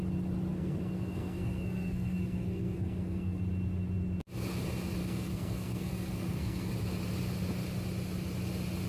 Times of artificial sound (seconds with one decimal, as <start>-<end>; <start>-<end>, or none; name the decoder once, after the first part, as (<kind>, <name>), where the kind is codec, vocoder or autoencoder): 0.5-3.4 (codec, SNAC); 5.0-6.7